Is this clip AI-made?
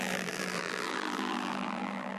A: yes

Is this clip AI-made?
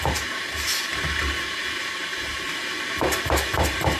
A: yes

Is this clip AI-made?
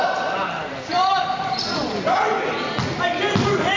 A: yes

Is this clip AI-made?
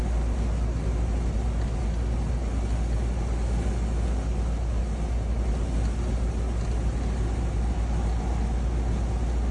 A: no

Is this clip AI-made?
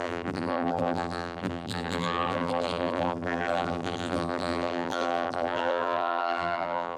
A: yes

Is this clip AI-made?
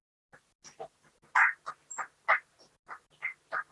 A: no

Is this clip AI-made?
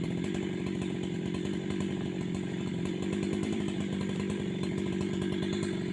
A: yes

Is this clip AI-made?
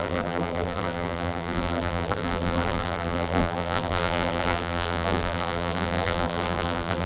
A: yes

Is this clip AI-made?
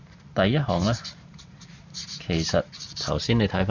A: yes